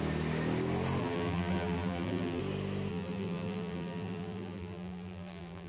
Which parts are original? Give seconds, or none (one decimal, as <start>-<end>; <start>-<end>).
0.0-1.0; 2.4-2.9